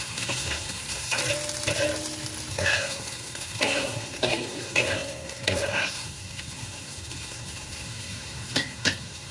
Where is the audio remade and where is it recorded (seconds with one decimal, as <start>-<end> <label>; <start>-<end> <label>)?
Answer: 0.0-1.2 remade; 1.2-2.5 recorded; 2.5-9.3 remade